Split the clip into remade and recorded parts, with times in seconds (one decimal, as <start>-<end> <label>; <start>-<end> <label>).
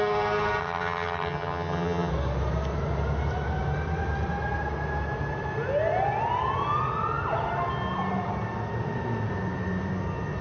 0.0-0.6 recorded; 0.6-2.1 remade; 2.1-10.4 recorded